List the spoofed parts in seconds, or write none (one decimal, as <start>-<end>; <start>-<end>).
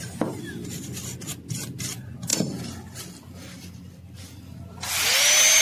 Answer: none